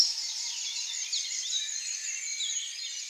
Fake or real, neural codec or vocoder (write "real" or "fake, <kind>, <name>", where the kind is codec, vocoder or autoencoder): fake, vocoder, BigVGAN v2